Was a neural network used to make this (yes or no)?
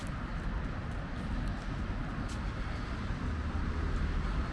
no